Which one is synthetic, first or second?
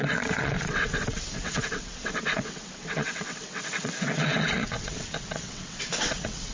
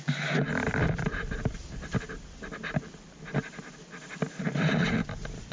first